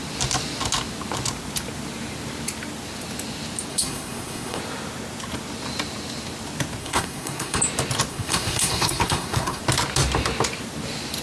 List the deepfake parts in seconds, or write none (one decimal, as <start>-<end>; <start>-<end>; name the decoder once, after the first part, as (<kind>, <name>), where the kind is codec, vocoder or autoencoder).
3.7-4.6 (codec, SNAC); 6.8-7.6; 8.1-9.6